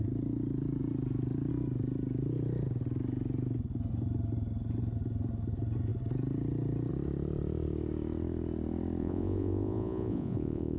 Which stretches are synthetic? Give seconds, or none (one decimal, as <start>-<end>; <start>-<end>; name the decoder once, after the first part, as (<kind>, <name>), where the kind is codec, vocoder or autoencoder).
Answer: 9.0-10.8 (vocoder, Vocos)